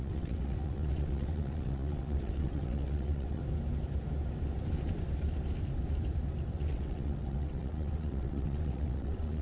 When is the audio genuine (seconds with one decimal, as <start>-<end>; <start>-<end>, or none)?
3.4-6.5